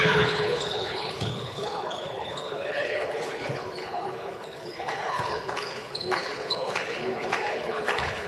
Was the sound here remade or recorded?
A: remade